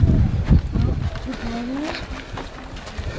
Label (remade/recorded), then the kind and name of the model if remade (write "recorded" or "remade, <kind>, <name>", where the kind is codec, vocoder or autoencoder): recorded